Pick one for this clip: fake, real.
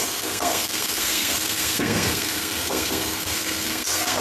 fake